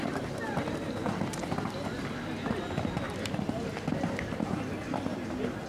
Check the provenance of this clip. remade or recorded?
recorded